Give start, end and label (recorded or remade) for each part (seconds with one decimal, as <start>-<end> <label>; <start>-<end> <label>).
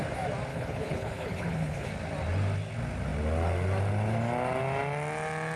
0.0-0.5 recorded; 0.5-1.9 remade; 1.9-5.6 recorded